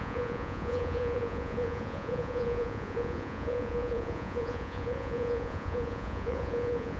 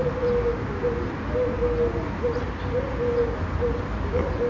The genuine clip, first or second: second